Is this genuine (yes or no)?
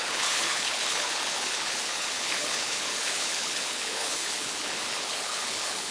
no